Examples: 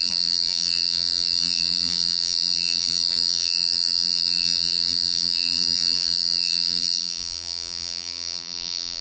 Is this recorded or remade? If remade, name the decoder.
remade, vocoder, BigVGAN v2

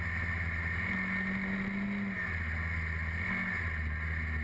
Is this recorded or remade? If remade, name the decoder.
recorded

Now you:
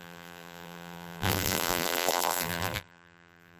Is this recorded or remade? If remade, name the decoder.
remade, vocoder, BigVGAN v2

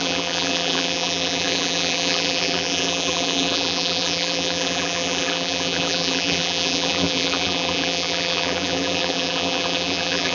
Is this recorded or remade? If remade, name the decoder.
remade, vocoder, BigVGAN v2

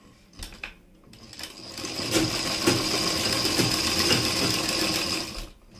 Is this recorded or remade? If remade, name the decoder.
recorded